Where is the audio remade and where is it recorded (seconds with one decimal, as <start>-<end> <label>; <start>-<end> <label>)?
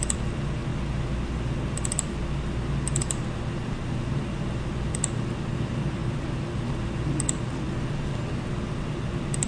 0.0-9.5 recorded